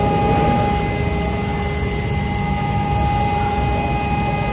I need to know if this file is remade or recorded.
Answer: recorded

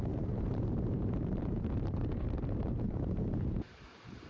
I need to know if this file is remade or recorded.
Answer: remade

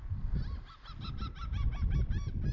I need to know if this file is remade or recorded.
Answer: remade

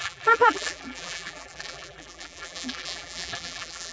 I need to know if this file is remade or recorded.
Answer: remade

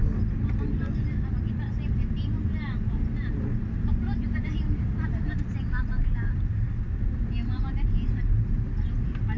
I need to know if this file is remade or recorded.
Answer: recorded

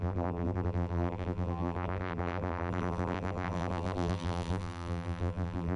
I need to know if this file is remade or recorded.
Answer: remade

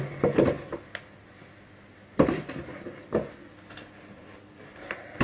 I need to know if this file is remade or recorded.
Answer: recorded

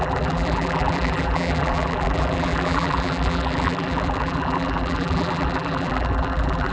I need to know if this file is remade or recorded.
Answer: remade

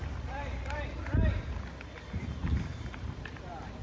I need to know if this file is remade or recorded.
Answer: remade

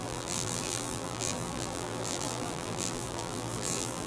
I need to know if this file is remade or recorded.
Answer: remade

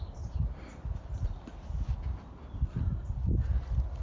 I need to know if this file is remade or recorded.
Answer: recorded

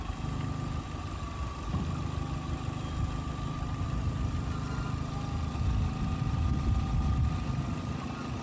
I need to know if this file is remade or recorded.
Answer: recorded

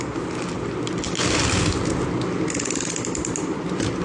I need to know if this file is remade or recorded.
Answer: recorded